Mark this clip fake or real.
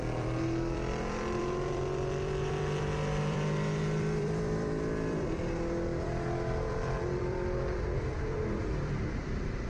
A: fake